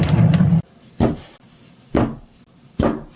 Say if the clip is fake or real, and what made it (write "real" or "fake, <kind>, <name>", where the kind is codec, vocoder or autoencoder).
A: real